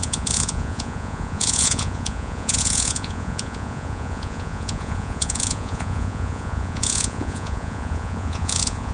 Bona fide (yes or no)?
no